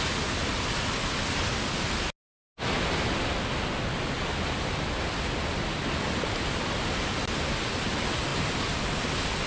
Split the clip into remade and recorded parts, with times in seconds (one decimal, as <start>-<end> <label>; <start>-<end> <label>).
0.0-9.5 recorded